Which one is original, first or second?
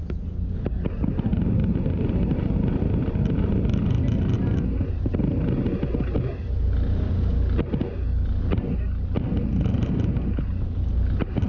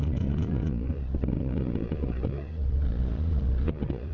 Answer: first